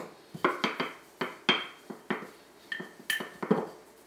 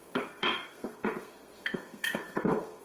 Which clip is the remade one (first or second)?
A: second